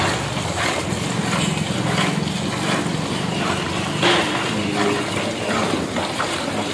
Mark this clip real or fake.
real